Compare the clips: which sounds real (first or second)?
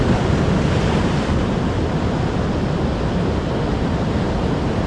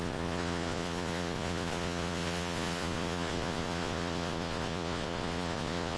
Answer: first